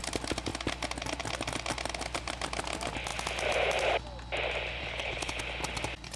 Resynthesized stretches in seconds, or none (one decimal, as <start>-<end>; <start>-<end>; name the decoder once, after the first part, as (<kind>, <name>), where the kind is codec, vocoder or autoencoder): 4.8-5.4 (codec, HILCodec)